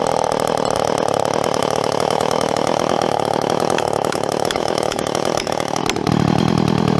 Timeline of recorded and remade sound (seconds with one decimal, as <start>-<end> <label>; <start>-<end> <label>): 0.0-1.6 recorded; 1.6-5.8 remade; 5.8-7.0 recorded